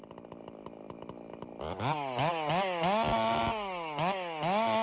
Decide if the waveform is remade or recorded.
recorded